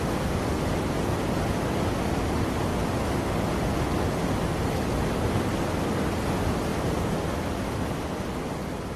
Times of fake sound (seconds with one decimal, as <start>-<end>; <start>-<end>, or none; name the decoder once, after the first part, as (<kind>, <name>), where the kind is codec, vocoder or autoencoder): 0.0-9.0 (vocoder, BigVGAN v2)